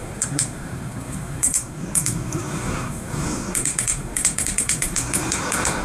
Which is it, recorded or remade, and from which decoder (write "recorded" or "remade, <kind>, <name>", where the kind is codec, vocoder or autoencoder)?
remade, codec, SNAC